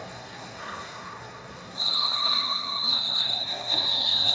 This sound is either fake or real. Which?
fake